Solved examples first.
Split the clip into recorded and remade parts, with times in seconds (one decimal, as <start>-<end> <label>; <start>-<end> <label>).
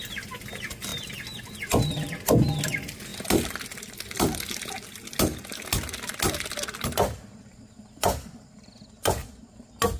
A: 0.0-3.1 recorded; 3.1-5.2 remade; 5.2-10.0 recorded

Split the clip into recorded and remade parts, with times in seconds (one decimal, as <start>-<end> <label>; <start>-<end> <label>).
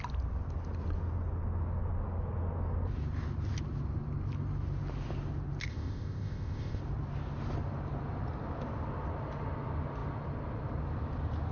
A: 0.0-5.7 recorded; 5.7-6.8 remade; 6.8-11.5 recorded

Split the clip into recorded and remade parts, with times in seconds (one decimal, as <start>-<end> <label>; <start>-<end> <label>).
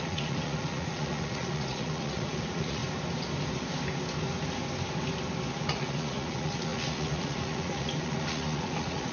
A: 0.0-2.8 remade; 2.8-5.5 recorded; 5.5-9.1 remade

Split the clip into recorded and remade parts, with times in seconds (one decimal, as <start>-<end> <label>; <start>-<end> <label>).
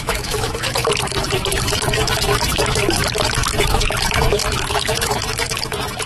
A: 0.0-6.1 remade